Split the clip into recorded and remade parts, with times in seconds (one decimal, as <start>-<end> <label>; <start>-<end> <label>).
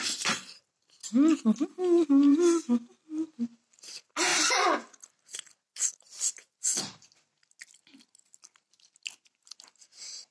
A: 0.0-10.3 recorded